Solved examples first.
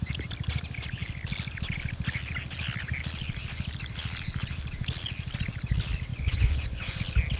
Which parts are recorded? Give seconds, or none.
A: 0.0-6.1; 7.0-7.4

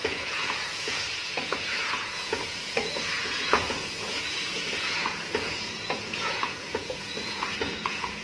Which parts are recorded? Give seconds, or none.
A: none

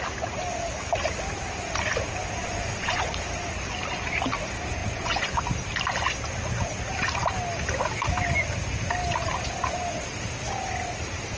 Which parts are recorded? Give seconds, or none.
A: 0.0-2.4; 3.0-4.8; 5.3-11.4

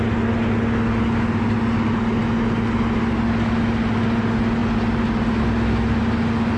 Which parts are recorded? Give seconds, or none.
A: 0.0-6.6